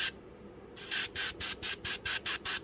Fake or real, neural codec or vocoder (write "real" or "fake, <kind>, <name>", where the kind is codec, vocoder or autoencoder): real